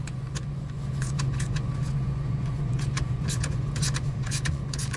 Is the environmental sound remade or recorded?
remade